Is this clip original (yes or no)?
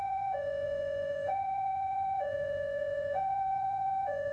no